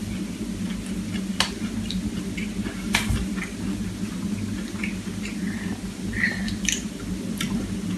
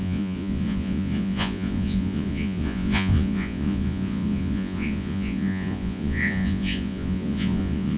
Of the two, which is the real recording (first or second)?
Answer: first